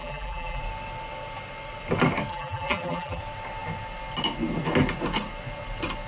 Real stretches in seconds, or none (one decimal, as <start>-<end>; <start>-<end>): 0.6-2.3; 3.2-6.1

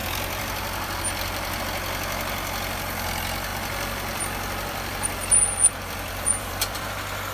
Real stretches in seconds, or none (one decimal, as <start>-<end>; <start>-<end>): 1.6-3.5

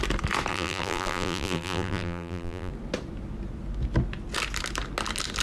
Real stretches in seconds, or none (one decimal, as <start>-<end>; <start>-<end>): 0.0-0.5; 2.7-5.4

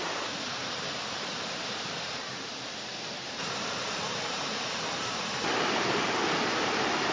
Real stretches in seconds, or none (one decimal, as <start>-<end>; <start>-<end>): 2.5-3.1

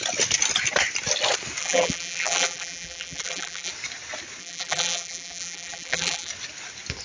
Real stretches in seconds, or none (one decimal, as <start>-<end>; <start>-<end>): 0.0-1.6; 3.7-4.4; 6.3-7.0

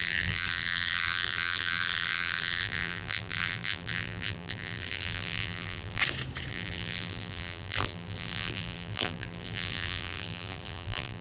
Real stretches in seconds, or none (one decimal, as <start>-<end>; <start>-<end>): 6.0-6.5

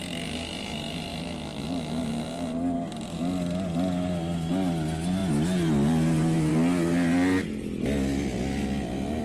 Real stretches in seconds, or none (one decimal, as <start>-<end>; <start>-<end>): 0.0-9.2

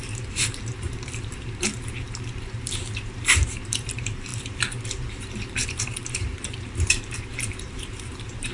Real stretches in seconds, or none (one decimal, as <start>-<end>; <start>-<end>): none